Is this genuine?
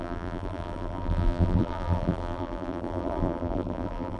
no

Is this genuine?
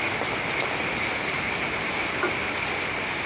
yes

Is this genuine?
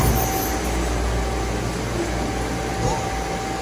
yes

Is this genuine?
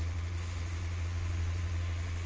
no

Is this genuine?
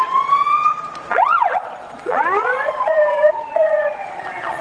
no